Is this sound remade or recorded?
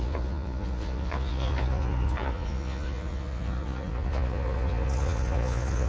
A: remade